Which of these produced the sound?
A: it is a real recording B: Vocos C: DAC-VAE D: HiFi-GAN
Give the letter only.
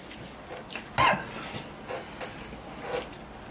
A